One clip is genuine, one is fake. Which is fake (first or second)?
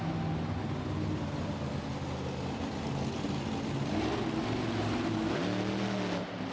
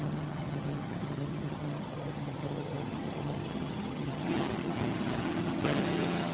second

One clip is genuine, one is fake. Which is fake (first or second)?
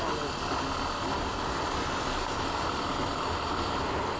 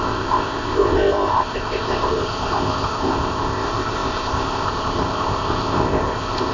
second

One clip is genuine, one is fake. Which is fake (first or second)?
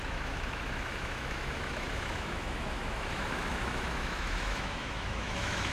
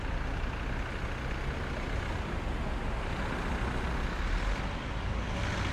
first